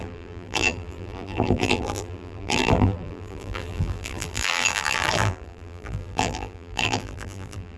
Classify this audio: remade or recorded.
remade